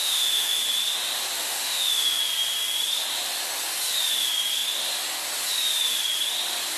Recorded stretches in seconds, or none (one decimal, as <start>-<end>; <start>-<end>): 0.6-1.4; 2.2-6.8